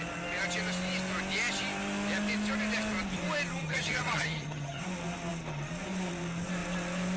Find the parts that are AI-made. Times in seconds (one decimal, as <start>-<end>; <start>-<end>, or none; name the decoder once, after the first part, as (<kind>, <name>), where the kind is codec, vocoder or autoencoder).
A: 3.6-4.8 (vocoder, HiFi-GAN)